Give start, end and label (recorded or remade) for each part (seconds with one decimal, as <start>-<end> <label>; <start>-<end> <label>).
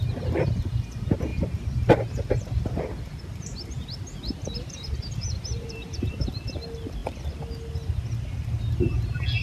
0.0-1.3 recorded; 1.3-6.1 remade; 6.1-9.4 recorded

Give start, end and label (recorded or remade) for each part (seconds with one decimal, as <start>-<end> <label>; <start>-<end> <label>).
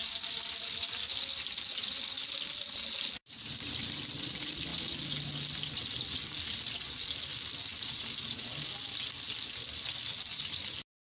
0.0-3.2 recorded; 3.2-4.0 remade; 4.0-11.2 recorded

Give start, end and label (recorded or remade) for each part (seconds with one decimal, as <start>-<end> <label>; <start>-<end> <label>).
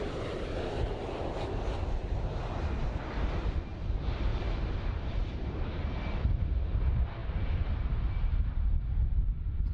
0.0-4.3 recorded; 4.3-5.4 remade; 5.4-9.7 recorded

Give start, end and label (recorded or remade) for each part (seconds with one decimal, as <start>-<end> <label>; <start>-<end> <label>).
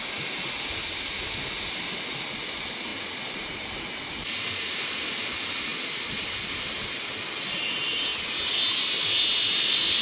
0.0-5.7 recorded; 5.7-6.9 remade; 6.9-10.0 recorded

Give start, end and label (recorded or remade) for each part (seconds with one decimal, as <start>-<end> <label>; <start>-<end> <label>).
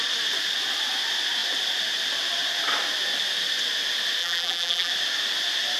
0.0-4.2 recorded; 4.2-4.9 remade; 4.9-5.8 recorded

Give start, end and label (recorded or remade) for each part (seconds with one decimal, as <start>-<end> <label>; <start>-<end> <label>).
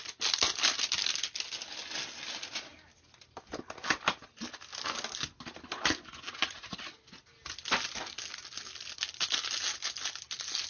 0.0-10.7 recorded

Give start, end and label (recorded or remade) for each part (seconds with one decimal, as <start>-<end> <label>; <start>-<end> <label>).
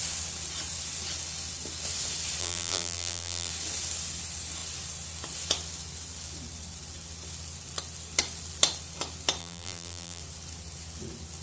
0.0-2.4 recorded; 2.4-3.5 remade; 3.5-9.4 recorded; 9.4-10.2 remade; 10.2-11.4 recorded